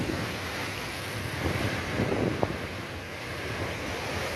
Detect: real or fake real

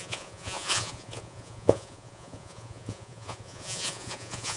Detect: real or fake fake